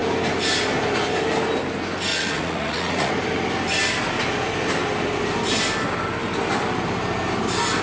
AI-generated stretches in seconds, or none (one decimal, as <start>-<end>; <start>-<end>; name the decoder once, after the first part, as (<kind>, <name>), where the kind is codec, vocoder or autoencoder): 2.1-3.1 (vocoder, Vocos)